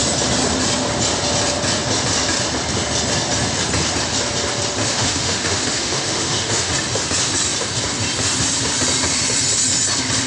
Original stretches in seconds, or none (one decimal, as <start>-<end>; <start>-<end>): 0.0-4.8; 6.7-10.3